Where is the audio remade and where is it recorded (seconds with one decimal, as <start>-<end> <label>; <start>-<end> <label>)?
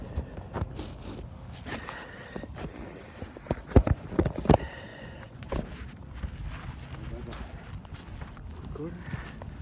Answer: 0.0-4.9 recorded; 4.9-5.5 remade; 5.5-9.6 recorded